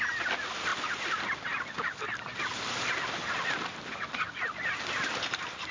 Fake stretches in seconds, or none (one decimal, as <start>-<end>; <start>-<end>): none